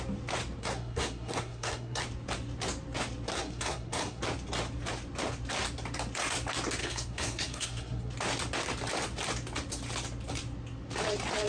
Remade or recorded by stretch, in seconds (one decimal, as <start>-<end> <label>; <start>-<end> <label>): 0.0-0.6 recorded; 0.6-2.0 remade; 2.0-3.3 recorded; 3.3-4.2 remade; 4.2-6.8 recorded; 6.8-8.1 remade; 8.1-11.5 recorded